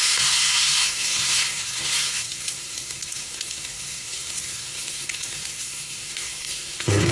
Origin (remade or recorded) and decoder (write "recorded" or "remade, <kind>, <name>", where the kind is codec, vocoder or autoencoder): remade, codec, SNAC